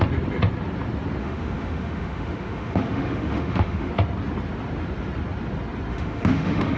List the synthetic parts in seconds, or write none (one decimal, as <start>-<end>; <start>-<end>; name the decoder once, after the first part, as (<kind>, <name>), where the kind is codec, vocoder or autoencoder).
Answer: 1.2-3.9 (autoencoder, DAC-VAE); 5.9-6.8

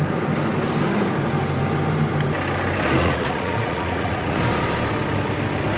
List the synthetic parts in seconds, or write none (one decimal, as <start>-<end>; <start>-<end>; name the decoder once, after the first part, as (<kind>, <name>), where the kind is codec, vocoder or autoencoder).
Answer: 3.0-4.4 (vocoder, Vocos)

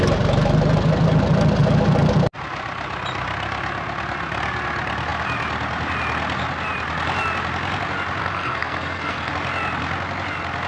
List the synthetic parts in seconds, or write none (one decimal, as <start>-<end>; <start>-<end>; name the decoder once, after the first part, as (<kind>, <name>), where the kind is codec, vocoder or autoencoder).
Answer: 8.2-9.3 (codec, SNAC)